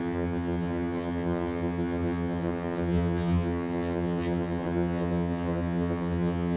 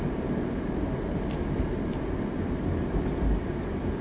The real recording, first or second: second